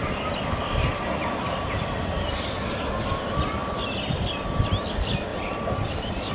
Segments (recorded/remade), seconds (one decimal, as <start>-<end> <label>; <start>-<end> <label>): 0.0-2.3 remade; 2.3-3.6 recorded; 3.6-4.3 remade; 4.3-5.3 recorded; 5.3-6.3 remade